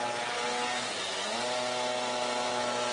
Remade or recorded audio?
recorded